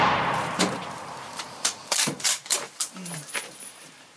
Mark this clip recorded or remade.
remade